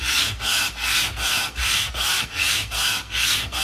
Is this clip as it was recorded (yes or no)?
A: no